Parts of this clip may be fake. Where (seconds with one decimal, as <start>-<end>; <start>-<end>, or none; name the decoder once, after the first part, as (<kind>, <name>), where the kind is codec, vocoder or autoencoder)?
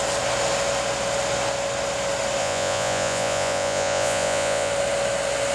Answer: 2.4-4.7 (vocoder, Vocos)